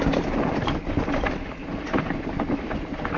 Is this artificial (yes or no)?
no